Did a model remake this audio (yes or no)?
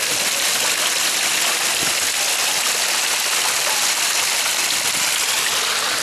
no